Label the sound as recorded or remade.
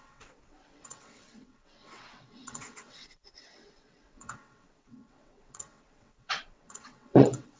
remade